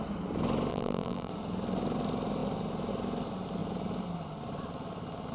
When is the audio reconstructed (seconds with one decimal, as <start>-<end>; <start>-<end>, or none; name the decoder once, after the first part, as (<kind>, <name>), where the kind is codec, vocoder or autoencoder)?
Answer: 0.7-1.3 (vocoder, BigVGAN v2)